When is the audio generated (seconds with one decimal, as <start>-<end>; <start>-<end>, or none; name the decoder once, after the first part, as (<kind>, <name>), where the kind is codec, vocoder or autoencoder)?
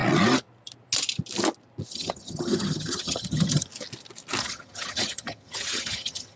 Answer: 1.9-3.7 (vocoder, HiFi-GAN); 4.4-6.4